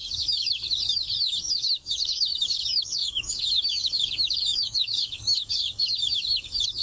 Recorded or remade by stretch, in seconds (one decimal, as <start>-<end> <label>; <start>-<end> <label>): 0.0-6.8 remade